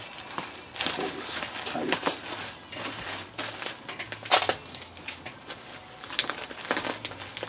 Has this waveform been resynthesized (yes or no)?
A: no